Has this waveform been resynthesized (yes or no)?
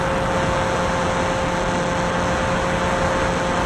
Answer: no